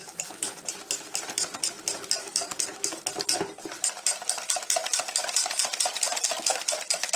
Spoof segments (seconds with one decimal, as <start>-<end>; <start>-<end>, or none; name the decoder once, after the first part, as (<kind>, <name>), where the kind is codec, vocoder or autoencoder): 0.0-0.6 (codec, DAC); 2.2-3.0